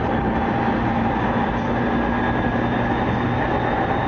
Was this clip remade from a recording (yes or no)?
no